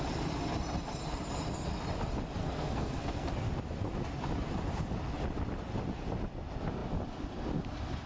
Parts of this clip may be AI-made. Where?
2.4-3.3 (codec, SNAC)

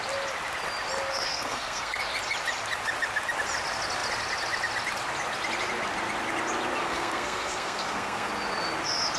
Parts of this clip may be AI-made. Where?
1.3-2.0 (codec, SNAC); 6.8-8.3